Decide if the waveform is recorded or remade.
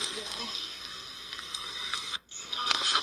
remade